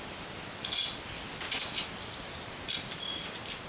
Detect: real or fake real